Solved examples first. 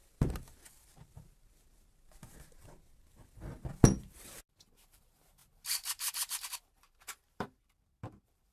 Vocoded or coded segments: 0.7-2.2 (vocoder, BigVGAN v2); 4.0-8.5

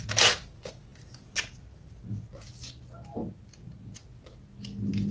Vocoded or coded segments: none

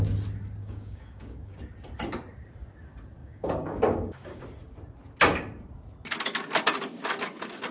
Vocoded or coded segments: 0.6-1.6 (codec, DAC); 3.2-4.4

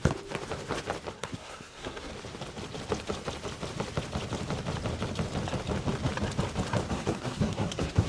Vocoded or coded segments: 1.1-2.1 (codec, SNAC); 6.9-8.1

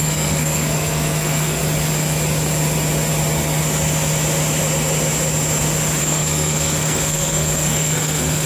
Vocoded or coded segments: 0.0-1.6 (codec, SNAC); 6.0-8.5

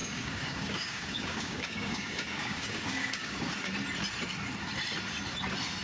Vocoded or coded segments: 0.0-3.5 (codec, DAC)

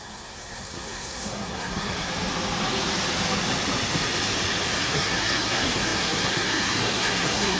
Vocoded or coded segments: 0.0-2.1 (codec, SNAC); 4.8-7.6